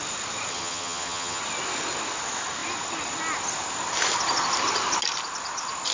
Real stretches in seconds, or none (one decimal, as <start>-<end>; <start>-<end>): 0.0-0.5; 1.4-5.9